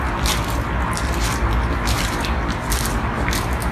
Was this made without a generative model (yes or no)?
yes